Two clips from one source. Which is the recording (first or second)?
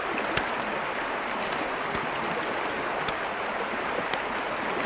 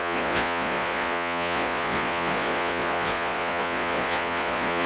first